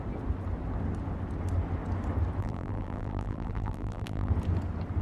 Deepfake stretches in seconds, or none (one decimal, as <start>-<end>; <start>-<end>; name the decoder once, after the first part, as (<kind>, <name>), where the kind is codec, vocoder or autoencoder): 2.4-4.3 (vocoder, BigVGAN v2)